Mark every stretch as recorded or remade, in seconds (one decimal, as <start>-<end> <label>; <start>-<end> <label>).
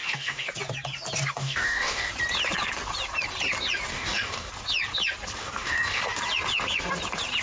0.0-0.5 remade; 0.5-1.4 recorded; 1.4-2.1 remade; 2.1-3.9 recorded; 3.9-4.5 remade; 4.5-5.4 recorded; 5.4-6.0 remade; 6.0-7.4 recorded